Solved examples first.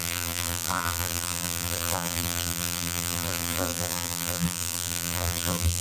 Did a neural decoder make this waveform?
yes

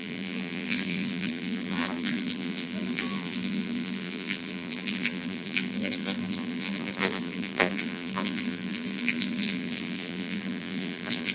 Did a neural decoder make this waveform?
yes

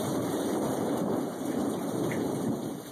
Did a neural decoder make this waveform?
yes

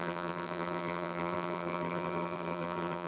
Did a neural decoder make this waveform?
yes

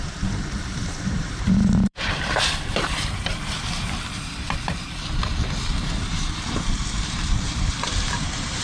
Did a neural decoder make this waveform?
yes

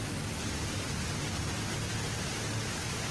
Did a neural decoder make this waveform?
no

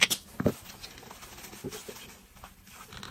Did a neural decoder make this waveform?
no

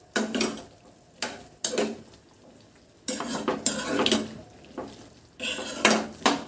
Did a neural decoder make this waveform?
no